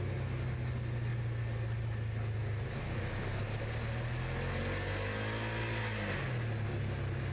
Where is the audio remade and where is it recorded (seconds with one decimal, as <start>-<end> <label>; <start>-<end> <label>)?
0.0-7.3 recorded